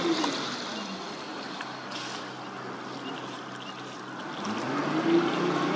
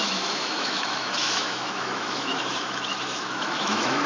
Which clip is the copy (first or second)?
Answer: second